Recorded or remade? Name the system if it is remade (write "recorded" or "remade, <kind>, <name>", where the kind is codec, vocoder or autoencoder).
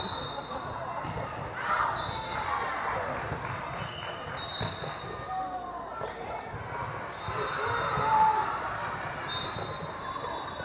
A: recorded